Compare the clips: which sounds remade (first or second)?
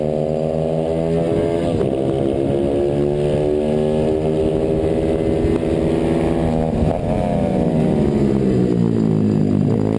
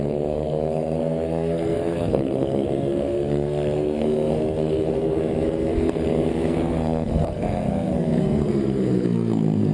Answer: second